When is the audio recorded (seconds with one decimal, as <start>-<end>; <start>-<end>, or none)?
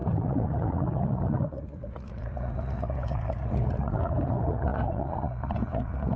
none